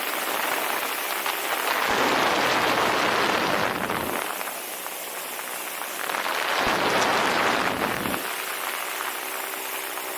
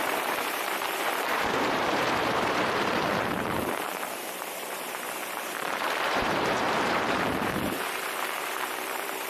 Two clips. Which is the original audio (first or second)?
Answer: first